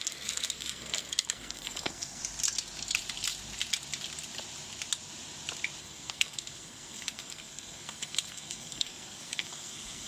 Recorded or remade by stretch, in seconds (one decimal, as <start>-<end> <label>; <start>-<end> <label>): 0.0-2.2 remade; 2.2-5.8 recorded; 5.8-10.1 remade